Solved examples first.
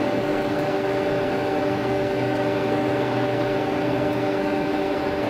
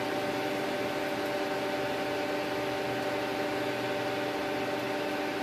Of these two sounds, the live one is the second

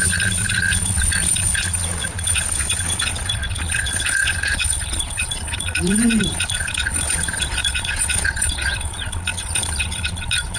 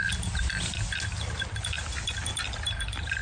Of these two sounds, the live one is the second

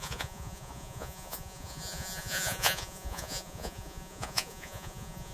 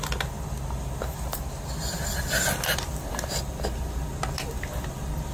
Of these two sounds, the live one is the second